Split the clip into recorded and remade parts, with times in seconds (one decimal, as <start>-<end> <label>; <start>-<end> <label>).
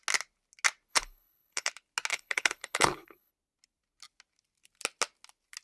0.0-0.9 recorded; 0.9-1.7 remade; 1.7-2.1 recorded; 2.1-3.3 remade; 3.3-5.6 recorded